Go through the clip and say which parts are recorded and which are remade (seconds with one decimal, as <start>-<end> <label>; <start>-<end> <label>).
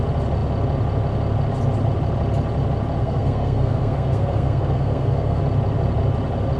0.0-3.0 recorded; 3.0-5.4 remade; 5.4-6.6 recorded